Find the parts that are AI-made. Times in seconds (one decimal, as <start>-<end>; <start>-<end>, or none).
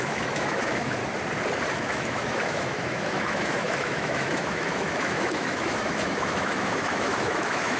0.0-1.0; 1.7-7.8